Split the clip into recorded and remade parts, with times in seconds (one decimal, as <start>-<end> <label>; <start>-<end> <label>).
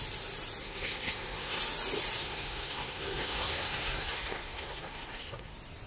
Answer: 0.0-0.6 recorded; 0.6-1.6 remade; 1.6-2.2 recorded; 2.2-5.5 remade; 5.5-5.9 recorded